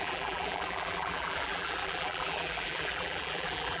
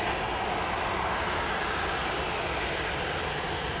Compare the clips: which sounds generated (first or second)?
first